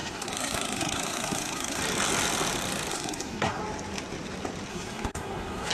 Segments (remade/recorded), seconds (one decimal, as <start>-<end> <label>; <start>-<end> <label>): 0.0-1.8 remade; 1.8-2.9 recorded; 2.9-3.6 remade; 3.6-4.7 recorded; 4.7-5.7 remade